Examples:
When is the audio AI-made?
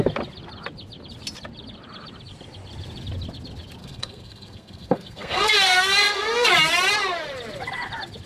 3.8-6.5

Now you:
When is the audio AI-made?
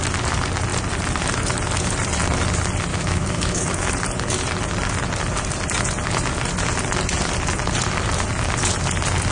2.9-3.9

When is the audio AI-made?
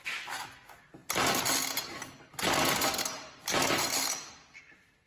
none